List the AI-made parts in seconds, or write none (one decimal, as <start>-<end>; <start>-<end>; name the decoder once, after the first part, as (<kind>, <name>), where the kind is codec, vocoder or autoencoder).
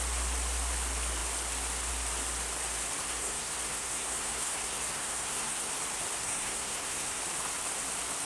3.0-5.7 (codec, SNAC); 6.2-7.2